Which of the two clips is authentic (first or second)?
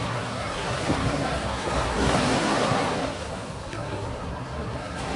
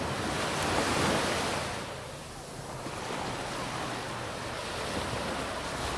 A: second